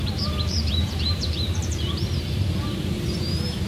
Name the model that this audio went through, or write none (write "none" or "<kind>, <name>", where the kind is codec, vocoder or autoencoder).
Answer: vocoder, BigVGAN v2